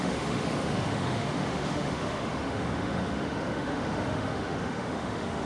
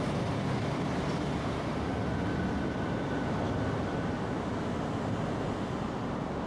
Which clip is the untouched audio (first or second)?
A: second